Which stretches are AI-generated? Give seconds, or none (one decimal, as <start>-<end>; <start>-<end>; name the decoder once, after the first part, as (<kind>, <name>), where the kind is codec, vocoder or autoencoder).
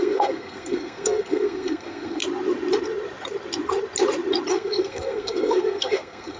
0.0-2.2 (codec, SNAC); 4.5-6.4